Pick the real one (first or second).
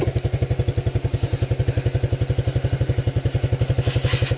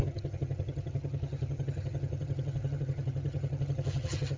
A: first